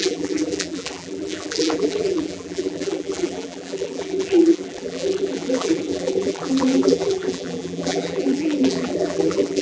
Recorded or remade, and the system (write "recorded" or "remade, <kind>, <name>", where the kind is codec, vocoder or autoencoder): remade, vocoder, BigVGAN v2